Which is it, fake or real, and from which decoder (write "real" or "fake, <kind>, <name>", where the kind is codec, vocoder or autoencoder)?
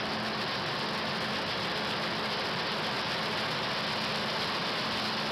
real